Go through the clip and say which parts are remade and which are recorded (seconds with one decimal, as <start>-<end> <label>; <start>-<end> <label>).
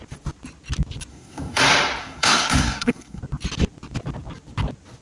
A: 0.0-1.1 recorded; 1.1-1.6 remade; 1.6-2.0 recorded; 2.0-3.2 remade; 3.2-5.0 recorded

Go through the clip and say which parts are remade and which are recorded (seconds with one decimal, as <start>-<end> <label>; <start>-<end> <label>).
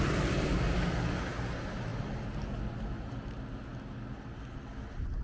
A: 0.0-5.2 recorded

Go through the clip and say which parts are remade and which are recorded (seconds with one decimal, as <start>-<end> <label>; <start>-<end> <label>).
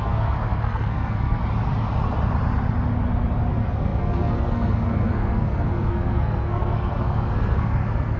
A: 0.0-1.4 remade; 1.4-3.5 recorded; 3.5-8.2 remade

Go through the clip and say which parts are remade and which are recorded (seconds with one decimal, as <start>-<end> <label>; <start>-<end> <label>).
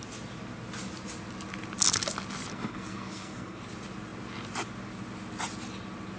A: 0.0-2.5 recorded; 2.5-3.6 remade; 3.6-6.2 recorded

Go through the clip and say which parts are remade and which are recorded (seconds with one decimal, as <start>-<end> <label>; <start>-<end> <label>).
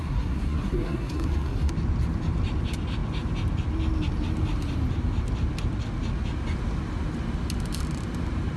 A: 0.0-1.7 remade; 1.7-8.6 recorded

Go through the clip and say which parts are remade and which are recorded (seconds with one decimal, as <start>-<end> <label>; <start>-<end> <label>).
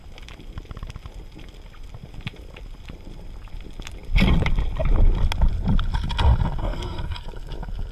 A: 0.0-6.6 recorded; 6.6-7.2 remade; 7.2-7.9 recorded